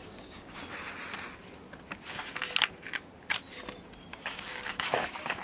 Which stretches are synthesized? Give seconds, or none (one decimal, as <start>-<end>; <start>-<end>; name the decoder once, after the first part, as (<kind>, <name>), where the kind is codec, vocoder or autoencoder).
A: 0.0-0.6 (codec, DAC); 4.1-5.4